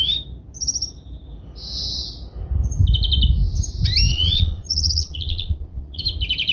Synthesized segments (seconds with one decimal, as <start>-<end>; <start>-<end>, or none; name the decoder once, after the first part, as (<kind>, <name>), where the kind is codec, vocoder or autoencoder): 4.1-6.0 (vocoder, Vocos)